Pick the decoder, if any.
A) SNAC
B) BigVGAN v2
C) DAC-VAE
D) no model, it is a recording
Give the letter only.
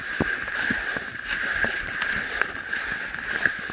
D